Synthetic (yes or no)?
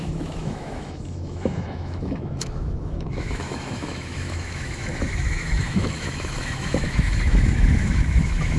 yes